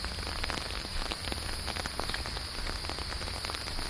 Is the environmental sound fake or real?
real